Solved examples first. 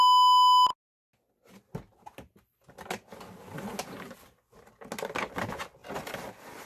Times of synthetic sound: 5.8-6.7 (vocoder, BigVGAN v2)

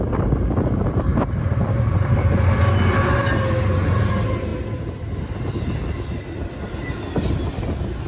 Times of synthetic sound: 1.1-2.6 (vocoder, BigVGAN v2)

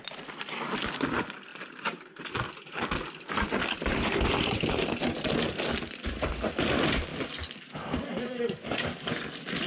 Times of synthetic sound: 7.1-9.1 (codec, DAC)

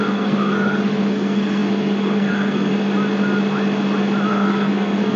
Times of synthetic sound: 0.0-2.7 (codec, SNAC); 4.3-5.2